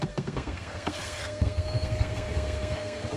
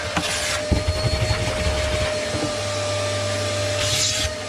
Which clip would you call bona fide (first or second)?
second